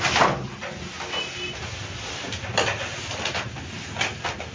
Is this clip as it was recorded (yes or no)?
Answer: yes